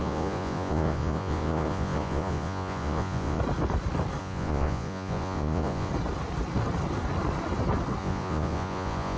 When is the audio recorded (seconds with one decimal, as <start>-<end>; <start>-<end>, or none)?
3.4-4.2; 5.9-8.0